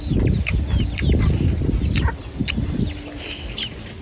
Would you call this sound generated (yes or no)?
no